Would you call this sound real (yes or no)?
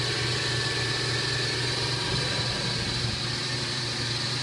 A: no